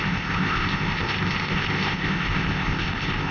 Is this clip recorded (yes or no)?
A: no